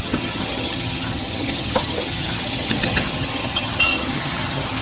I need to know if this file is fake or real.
fake